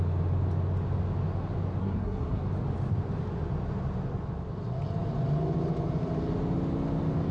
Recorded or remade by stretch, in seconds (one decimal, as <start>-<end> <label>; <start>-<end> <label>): 0.0-1.8 recorded; 1.8-2.4 remade; 2.4-7.3 recorded

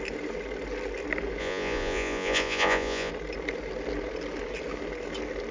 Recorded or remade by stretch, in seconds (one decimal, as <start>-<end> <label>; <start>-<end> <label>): 0.0-1.4 recorded; 1.4-3.1 remade; 3.1-5.5 recorded

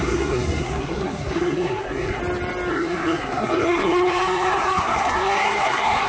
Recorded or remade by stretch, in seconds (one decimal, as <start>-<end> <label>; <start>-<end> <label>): 0.0-2.2 remade; 2.2-2.7 recorded; 2.7-6.1 remade

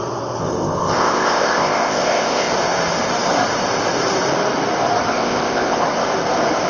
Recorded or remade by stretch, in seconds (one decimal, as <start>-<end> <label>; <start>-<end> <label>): 0.0-0.4 recorded; 0.4-2.5 remade; 2.5-5.1 recorded; 5.1-5.8 remade; 5.8-6.7 recorded

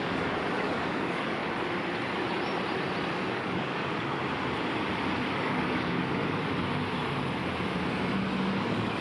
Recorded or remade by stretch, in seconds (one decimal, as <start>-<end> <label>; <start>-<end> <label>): 0.0-1.4 remade; 1.4-3.3 recorded; 3.3-4.2 remade; 4.2-5.3 recorded; 5.3-6.2 remade; 6.2-8.6 recorded; 8.6-9.0 remade

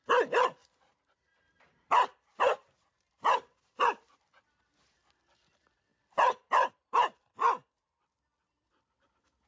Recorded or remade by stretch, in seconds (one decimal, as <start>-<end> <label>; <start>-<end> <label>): 0.0-0.6 recorded; 0.6-5.1 remade; 5.1-5.9 recorded; 5.9-6.7 remade; 6.7-9.5 recorded

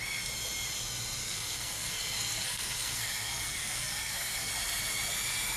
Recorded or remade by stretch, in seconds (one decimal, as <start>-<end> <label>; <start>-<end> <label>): 0.0-1.2 recorded; 1.2-4.5 remade; 4.5-5.6 recorded

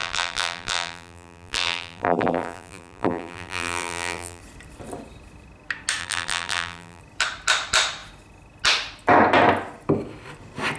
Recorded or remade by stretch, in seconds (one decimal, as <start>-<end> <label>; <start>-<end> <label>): 0.0-4.4 remade; 4.4-6.0 recorded; 6.0-7.0 remade; 7.0-10.8 recorded